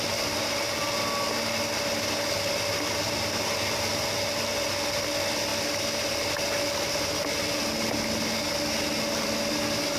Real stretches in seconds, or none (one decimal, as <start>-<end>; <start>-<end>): 0.0-10.0